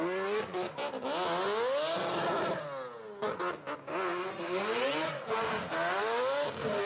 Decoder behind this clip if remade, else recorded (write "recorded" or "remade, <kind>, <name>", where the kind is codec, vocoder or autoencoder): recorded